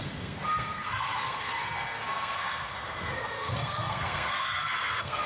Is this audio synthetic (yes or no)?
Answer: yes